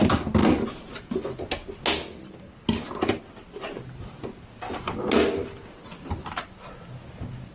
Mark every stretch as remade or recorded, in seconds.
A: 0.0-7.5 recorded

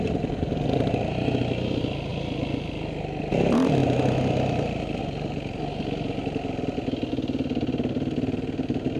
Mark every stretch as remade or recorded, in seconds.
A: 0.0-9.0 recorded

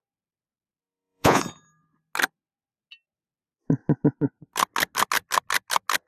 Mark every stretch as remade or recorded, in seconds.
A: 0.0-0.8 recorded; 0.8-1.4 remade; 1.4-6.1 recorded